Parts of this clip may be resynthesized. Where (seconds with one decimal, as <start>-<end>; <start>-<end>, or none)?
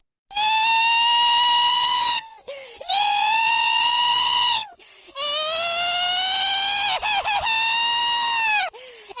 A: 1.7-5.0